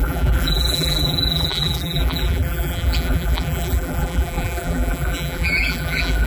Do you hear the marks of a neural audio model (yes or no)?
yes